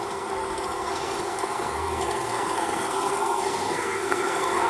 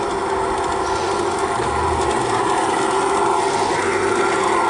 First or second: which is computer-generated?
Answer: first